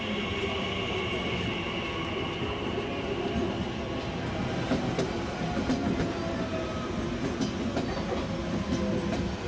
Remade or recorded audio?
recorded